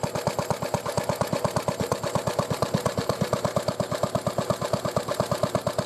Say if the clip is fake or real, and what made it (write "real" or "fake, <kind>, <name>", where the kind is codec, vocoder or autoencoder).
real